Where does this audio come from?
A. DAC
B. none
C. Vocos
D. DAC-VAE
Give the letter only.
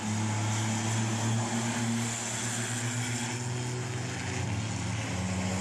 B